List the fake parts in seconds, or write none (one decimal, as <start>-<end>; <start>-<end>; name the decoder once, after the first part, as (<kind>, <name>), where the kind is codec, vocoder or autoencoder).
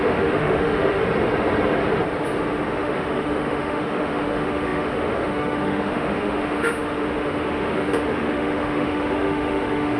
0.0-1.0 (autoencoder, DAC-VAE); 2.7-10.0